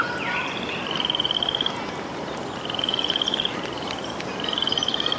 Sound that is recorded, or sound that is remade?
recorded